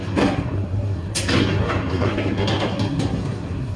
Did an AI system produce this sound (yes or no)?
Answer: yes